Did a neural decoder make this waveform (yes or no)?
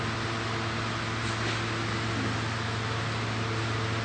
no